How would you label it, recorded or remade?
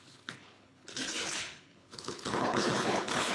remade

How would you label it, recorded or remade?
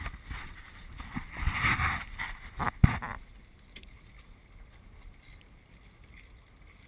recorded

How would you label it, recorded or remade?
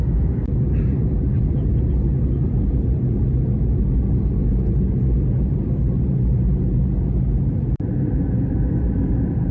recorded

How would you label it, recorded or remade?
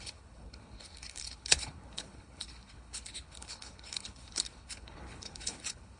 remade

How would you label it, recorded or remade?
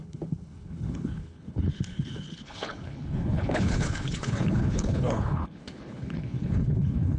remade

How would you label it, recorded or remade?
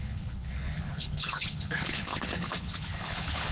remade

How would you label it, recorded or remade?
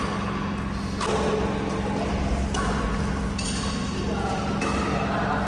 recorded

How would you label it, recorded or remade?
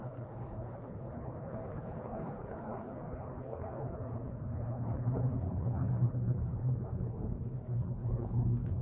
remade